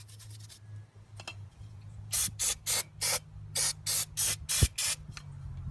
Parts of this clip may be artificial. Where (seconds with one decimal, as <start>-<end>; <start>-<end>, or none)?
1.3-2.2